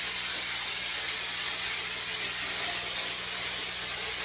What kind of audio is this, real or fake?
real